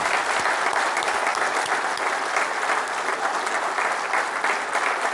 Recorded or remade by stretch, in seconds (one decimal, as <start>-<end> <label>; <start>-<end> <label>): 0.0-5.1 recorded